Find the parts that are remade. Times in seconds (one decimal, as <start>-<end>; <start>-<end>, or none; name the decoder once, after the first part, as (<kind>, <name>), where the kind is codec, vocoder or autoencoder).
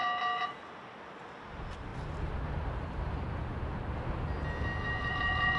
1.2-1.9 (vocoder, BigVGAN v2); 5.1-5.6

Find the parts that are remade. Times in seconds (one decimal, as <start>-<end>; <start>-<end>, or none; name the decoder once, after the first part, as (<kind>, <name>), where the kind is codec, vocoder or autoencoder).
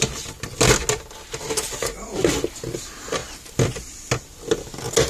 none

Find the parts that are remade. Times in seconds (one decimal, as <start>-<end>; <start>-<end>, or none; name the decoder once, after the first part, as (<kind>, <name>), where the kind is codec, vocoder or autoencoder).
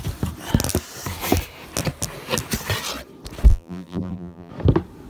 3.5-4.5 (vocoder, BigVGAN v2)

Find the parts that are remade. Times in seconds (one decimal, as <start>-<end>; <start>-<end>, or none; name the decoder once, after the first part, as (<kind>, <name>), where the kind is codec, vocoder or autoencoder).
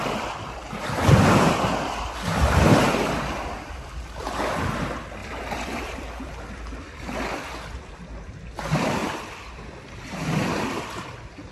0.0-2.8 (vocoder, BigVGAN v2); 5.2-7.0; 9.0-11.5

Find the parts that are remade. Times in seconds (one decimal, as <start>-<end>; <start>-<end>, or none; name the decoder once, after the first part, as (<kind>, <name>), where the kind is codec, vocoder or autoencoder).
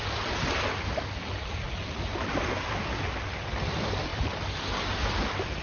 0.0-5.6 (vocoder, BigVGAN v2)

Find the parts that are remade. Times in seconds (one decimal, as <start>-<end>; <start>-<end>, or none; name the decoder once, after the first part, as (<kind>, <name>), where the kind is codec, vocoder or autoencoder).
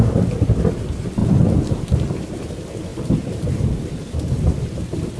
0.0-5.2 (vocoder, BigVGAN v2)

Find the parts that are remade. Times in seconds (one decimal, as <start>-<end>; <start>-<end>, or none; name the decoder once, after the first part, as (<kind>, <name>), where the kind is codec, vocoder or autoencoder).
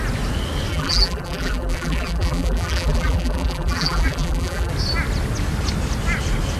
0.7-4.7 (vocoder, BigVGAN v2)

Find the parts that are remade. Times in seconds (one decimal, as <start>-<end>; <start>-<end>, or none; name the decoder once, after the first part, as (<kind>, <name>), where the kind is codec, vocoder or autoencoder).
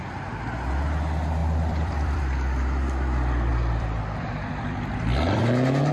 1.4-2.2 (vocoder, BigVGAN v2); 3.5-5.4